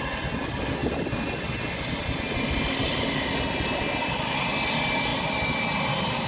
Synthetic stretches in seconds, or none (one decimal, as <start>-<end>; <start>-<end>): none

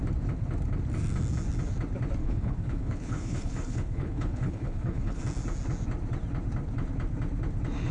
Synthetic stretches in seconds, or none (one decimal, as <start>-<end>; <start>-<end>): 2.2-5.2

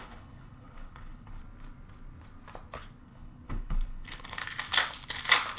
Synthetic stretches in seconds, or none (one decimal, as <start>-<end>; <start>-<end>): 0.0-1.4; 3.0-4.4

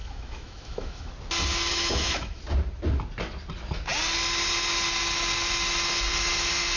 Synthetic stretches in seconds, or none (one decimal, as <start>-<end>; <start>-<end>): 0.0-1.1; 1.7-2.4

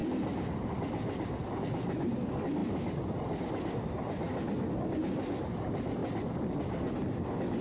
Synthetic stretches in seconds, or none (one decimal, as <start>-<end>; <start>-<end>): 0.0-1.4; 2.6-3.4

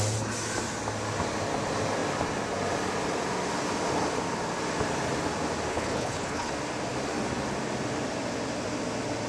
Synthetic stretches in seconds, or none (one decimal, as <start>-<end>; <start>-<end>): 5.7-6.5

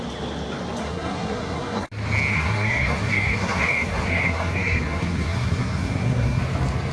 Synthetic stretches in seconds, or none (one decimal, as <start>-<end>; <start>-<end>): 0.8-1.9; 2.3-6.4

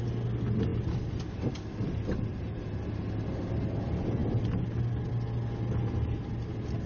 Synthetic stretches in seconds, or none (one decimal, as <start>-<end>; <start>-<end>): 2.3-2.9